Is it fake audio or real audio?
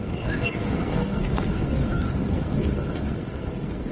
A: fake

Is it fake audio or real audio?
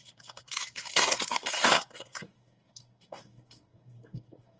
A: fake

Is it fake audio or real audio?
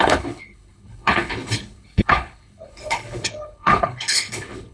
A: fake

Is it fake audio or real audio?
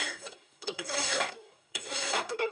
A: fake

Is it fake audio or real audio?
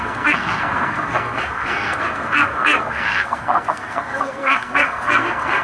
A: fake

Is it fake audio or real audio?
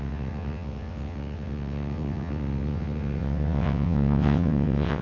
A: fake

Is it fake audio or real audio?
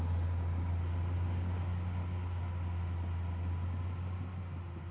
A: real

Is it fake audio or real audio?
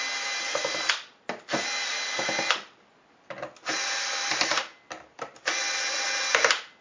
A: real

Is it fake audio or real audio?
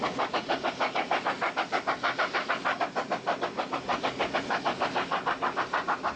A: real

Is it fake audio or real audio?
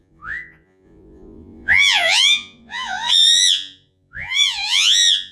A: fake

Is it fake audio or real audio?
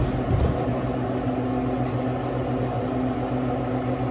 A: real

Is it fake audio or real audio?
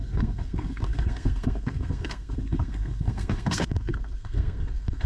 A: fake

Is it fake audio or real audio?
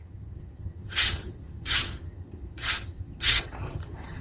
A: fake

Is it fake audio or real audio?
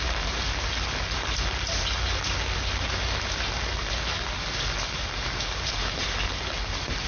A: real